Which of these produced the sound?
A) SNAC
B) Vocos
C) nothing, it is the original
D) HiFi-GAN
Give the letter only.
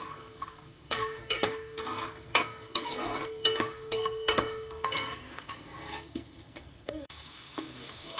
A